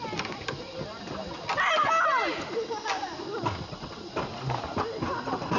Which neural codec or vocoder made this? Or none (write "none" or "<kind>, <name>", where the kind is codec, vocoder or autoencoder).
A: none